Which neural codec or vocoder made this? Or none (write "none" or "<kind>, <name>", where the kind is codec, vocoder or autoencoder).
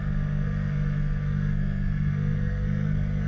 codec, SNAC